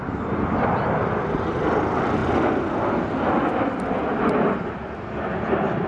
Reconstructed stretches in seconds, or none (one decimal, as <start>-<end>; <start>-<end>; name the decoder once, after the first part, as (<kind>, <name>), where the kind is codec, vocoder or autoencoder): none